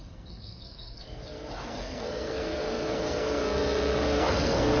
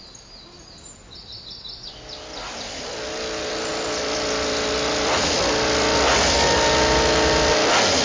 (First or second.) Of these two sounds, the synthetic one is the first